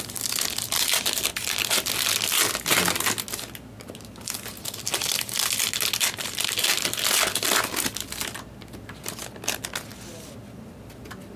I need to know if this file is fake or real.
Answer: real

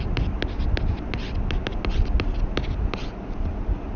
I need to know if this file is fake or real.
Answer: real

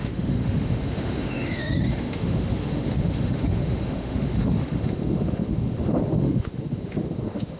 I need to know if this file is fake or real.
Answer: fake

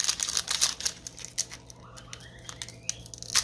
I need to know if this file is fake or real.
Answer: real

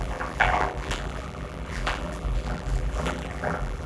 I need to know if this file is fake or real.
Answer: fake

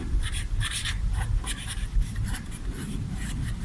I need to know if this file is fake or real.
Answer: fake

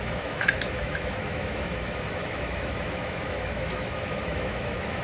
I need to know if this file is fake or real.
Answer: fake